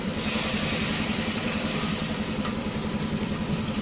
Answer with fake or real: fake